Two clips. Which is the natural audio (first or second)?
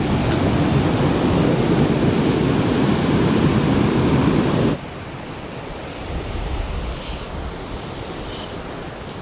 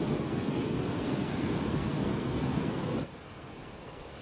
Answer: first